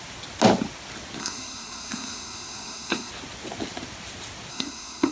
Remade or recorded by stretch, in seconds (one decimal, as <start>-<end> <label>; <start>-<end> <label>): 0.0-1.2 recorded; 1.2-3.1 remade; 3.1-4.5 recorded; 4.5-5.1 remade